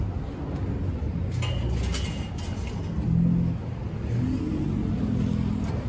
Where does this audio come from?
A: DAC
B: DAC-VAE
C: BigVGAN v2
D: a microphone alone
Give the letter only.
D